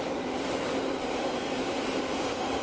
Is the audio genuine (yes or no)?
yes